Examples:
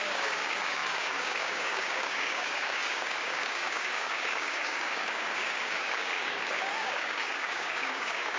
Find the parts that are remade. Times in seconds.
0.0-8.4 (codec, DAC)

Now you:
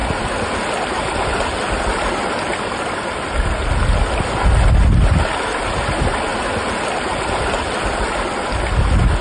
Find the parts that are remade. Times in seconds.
none